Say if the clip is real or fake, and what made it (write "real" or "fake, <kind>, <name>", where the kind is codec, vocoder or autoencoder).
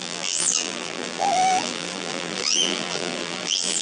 fake, vocoder, BigVGAN v2